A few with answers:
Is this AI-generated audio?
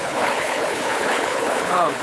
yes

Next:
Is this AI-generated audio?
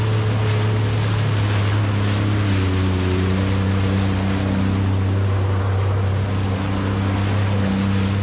no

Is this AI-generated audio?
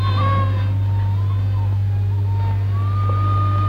no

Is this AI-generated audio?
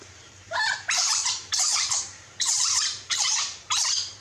yes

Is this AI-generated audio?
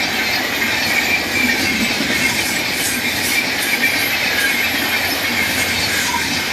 yes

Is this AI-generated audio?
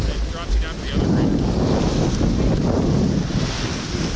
no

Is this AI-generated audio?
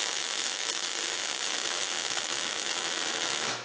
yes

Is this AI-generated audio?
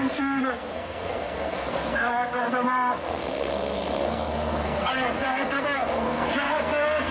yes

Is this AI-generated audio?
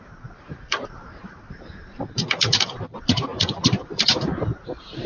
yes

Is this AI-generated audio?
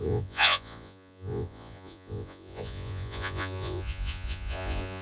yes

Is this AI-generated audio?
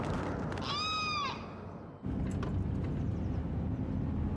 no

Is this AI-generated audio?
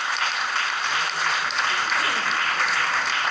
no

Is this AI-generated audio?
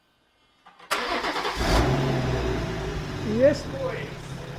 no